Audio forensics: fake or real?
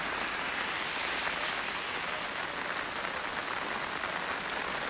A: real